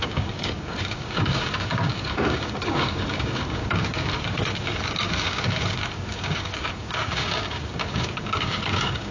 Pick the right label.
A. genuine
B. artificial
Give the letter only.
B